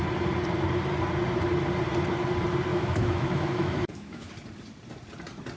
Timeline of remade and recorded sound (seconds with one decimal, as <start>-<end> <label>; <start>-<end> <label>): 0.0-2.7 recorded; 2.7-4.3 remade; 4.3-5.6 recorded